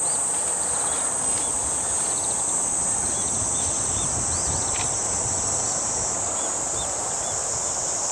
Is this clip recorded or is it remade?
recorded